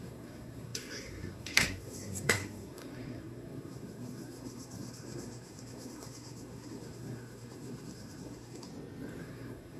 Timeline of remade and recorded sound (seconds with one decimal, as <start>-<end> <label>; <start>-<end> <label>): 0.0-8.7 remade; 8.7-9.2 recorded; 9.2-9.8 remade